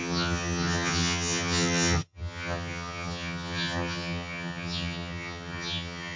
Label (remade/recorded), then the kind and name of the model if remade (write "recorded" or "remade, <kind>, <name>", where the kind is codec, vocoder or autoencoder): remade, vocoder, HiFi-GAN